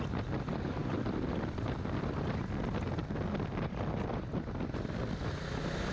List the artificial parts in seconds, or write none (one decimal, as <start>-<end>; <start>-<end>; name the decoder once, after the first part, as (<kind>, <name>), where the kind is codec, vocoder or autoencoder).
none